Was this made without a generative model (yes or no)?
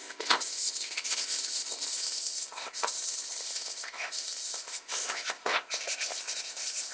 no